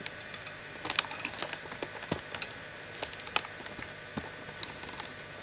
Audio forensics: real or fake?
real